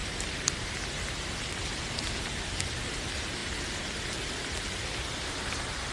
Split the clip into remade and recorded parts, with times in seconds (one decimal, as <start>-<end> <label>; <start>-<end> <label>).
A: 0.0-5.9 recorded